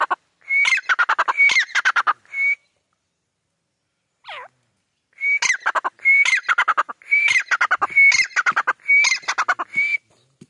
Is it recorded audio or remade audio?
recorded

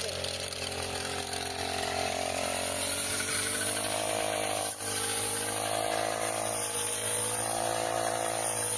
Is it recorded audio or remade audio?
recorded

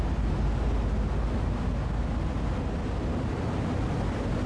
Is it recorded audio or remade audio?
recorded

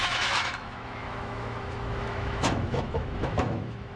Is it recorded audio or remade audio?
remade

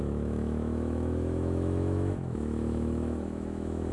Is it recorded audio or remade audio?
remade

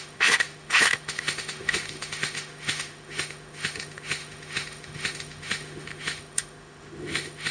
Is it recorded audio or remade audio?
remade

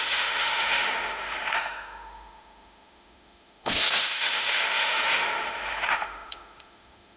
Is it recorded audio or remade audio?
remade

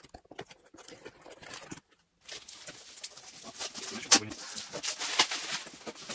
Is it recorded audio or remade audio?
recorded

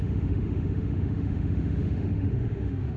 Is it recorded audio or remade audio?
remade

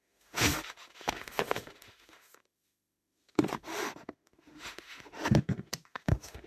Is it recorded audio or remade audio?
remade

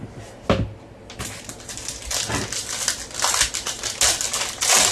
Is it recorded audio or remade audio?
recorded